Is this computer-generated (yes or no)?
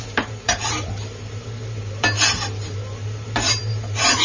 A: yes